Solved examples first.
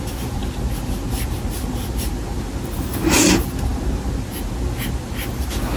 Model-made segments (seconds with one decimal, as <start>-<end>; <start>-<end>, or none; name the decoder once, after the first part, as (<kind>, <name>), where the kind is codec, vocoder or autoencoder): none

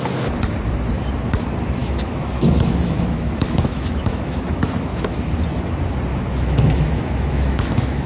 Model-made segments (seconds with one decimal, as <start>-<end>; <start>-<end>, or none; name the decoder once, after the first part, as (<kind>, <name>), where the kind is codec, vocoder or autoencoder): 1.8-5.3 (autoencoder, DAC-VAE); 6.1-8.1

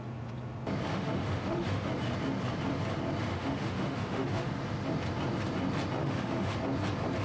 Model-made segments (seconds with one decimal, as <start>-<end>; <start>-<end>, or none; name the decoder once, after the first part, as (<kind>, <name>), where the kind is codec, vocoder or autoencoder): 0.9-1.9 (autoencoder, DAC-VAE); 3.3-4.5; 6.0-6.5